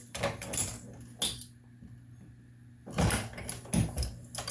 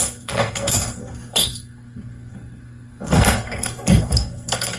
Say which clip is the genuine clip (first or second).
first